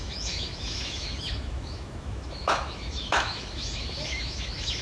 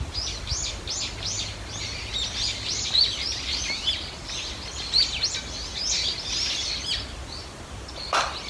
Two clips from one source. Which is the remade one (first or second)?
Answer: first